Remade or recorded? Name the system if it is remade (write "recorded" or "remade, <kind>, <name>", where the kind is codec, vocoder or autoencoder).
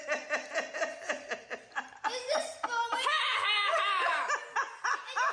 recorded